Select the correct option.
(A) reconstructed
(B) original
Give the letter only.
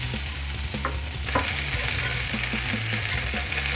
B